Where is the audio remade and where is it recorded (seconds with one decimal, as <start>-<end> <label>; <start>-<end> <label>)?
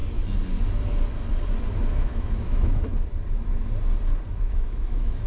0.0-1.9 recorded; 1.9-2.9 remade; 2.9-4.3 recorded; 4.3-5.3 remade